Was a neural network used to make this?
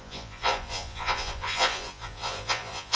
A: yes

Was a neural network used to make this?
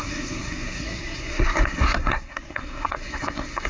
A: yes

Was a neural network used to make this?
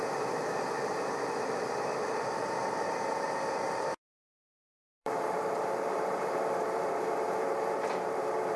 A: yes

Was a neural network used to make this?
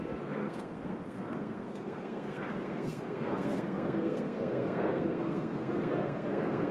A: yes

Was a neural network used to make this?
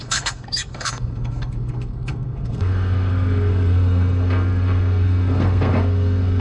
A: yes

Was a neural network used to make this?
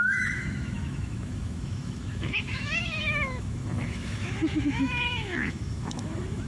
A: yes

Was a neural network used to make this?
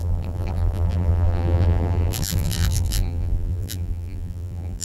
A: yes